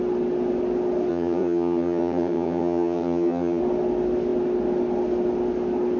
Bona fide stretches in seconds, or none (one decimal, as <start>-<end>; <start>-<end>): 0.0-1.1; 3.6-6.0